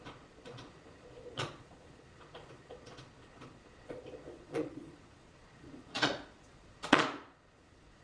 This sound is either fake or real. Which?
fake